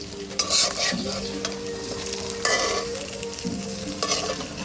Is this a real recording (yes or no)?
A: yes